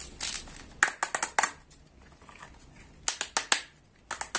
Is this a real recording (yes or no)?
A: yes